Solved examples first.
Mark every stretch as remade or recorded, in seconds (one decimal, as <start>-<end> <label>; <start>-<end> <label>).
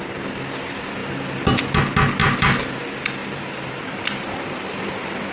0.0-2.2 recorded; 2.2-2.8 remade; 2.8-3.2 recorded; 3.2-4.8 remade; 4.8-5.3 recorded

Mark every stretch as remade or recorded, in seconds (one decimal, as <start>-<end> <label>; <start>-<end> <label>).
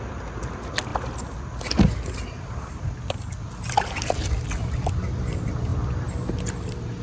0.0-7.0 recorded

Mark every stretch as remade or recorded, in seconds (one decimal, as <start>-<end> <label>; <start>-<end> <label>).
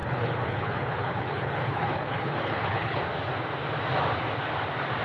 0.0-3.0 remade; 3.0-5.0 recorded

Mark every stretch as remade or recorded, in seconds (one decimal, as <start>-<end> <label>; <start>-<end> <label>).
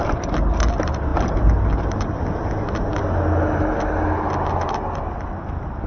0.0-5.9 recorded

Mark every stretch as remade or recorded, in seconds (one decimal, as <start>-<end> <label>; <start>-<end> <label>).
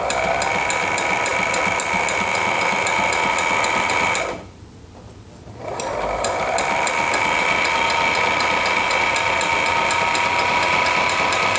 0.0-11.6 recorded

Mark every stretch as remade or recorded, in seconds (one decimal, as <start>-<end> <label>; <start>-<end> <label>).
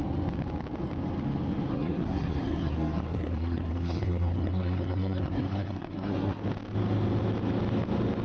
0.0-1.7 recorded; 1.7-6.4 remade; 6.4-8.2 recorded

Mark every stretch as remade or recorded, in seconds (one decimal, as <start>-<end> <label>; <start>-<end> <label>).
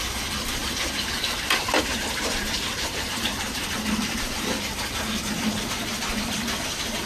0.0-0.6 recorded; 0.6-4.5 remade; 4.5-7.1 recorded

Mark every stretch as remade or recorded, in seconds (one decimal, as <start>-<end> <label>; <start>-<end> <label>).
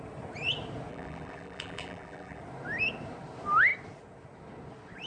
0.0-0.9 recorded; 0.9-2.4 remade; 2.4-5.1 recorded